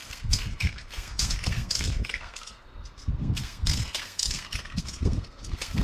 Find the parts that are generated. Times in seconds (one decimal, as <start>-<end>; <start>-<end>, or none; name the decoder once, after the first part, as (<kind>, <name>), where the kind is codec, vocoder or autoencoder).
0.0-5.8 (codec, SNAC)